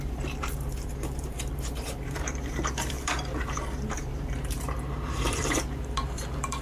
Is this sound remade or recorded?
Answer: remade